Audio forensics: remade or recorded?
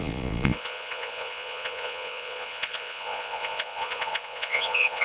remade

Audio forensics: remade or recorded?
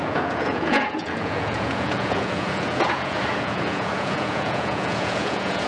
remade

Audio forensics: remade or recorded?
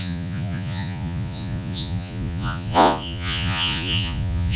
remade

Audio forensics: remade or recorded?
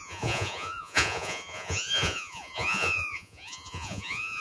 remade